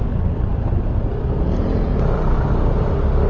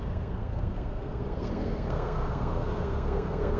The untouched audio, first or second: first